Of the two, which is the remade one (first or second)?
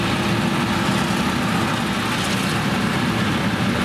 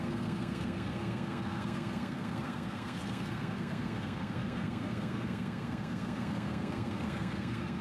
second